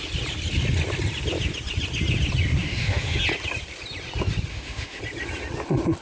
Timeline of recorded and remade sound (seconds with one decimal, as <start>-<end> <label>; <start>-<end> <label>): 0.0-2.6 recorded; 2.6-3.2 remade; 3.2-4.5 recorded; 4.5-5.0 remade; 5.0-6.0 recorded